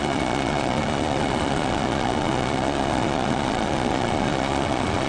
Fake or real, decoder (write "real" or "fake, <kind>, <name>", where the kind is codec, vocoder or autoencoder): fake, vocoder, Vocos